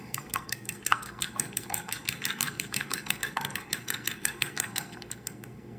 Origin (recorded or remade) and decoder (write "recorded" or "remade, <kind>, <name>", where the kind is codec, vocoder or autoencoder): remade, codec, SNAC